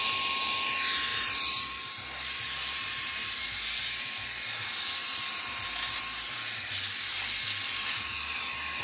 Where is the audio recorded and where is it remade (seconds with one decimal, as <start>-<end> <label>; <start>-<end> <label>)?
0.0-1.1 recorded; 1.1-3.8 remade; 3.8-5.0 recorded; 5.0-8.1 remade; 8.1-8.8 recorded